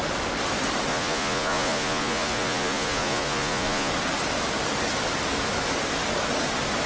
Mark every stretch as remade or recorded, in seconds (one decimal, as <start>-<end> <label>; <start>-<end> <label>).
0.0-0.9 recorded; 0.9-3.9 remade; 3.9-6.9 recorded